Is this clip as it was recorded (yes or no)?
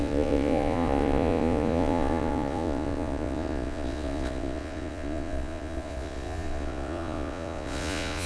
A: no